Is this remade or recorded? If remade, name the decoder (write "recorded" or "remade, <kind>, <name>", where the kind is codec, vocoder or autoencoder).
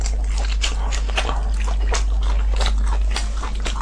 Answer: recorded